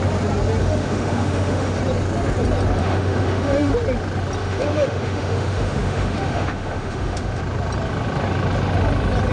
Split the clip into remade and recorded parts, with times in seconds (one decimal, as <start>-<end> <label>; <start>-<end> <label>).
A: 0.0-0.6 recorded; 0.6-1.8 remade; 1.8-2.8 recorded; 2.8-3.7 remade; 3.7-4.4 recorded; 4.4-7.4 remade; 7.4-9.3 recorded